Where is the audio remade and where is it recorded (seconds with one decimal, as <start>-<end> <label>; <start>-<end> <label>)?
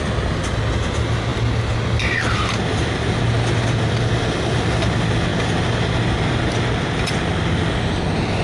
0.0-8.4 recorded